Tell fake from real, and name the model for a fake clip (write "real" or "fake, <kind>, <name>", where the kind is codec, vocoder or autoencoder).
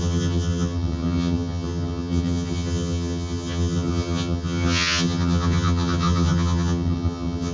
fake, vocoder, HiFi-GAN